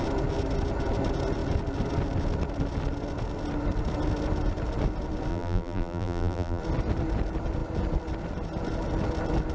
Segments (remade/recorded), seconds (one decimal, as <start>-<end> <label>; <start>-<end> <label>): 0.0-5.3 recorded; 5.3-6.6 remade; 6.6-9.5 recorded